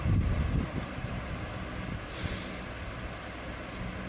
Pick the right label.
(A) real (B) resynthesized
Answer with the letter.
A